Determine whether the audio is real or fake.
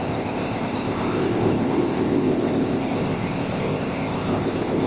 fake